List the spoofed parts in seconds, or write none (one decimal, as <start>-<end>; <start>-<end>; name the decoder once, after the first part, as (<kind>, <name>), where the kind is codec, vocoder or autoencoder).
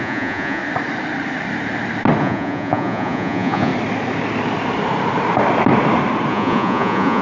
0.0-0.6 (vocoder, Vocos); 2.2-3.7; 6.3-7.2